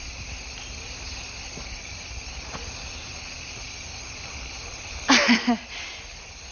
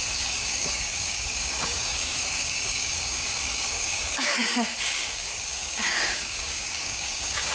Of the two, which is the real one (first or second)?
first